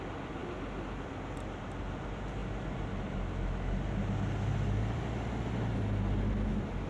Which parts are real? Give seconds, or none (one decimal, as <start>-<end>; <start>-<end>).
0.0-6.9